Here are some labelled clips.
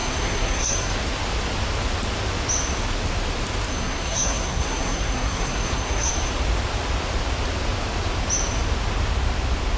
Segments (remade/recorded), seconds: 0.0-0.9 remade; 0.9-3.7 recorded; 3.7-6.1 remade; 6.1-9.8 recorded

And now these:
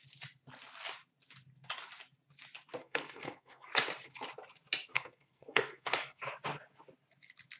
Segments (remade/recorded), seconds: 0.0-2.8 recorded; 2.8-3.7 remade; 3.7-4.9 recorded; 4.9-6.2 remade; 6.2-7.6 recorded

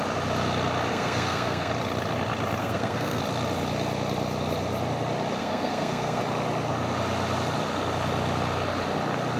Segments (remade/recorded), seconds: 0.0-0.9 recorded; 0.9-1.7 remade; 1.7-2.6 recorded; 2.6-3.2 remade; 3.2-5.4 recorded; 5.4-6.2 remade; 6.2-9.4 recorded

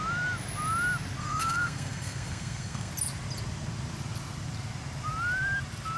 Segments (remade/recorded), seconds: 0.0-1.2 recorded; 1.2-2.9 remade; 2.9-6.0 recorded